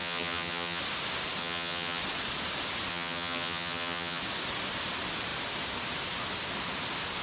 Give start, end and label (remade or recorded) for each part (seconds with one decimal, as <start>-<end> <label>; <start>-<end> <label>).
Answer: 0.0-0.8 remade; 0.8-1.4 recorded; 1.4-2.0 remade; 2.0-2.9 recorded; 2.9-4.2 remade; 4.2-7.2 recorded